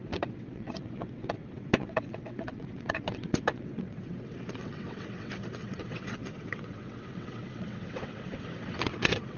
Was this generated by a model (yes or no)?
yes